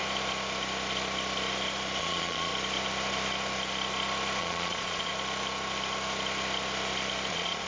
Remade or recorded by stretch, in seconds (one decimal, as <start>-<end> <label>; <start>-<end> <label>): 0.0-2.0 recorded; 2.0-2.5 remade; 2.5-4.4 recorded; 4.4-5.1 remade; 5.1-7.3 recorded; 7.3-7.7 remade